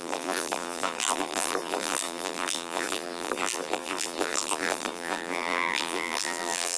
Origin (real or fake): fake